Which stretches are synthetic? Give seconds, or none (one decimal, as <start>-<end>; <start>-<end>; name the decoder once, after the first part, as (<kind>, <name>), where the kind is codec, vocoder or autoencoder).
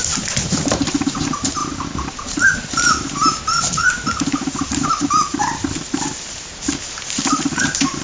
0.0-3.2 (vocoder, BigVGAN v2); 3.9-6.5; 7.5-8.0